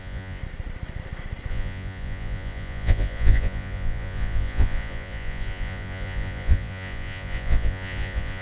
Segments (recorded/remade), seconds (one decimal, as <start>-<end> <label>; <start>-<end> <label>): 0.0-0.4 remade; 0.4-1.5 recorded; 1.5-8.4 remade